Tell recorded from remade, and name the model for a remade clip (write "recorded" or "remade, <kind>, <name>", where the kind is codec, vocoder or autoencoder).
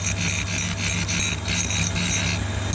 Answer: recorded